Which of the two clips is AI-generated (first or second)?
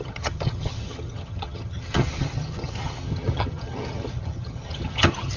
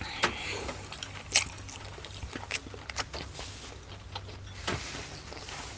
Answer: first